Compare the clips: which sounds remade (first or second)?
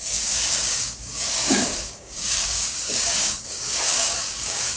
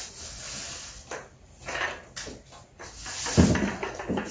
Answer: first